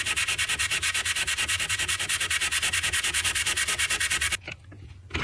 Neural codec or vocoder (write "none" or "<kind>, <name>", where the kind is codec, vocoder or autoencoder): none